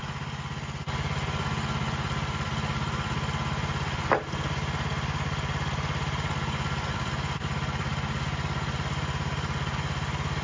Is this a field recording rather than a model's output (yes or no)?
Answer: yes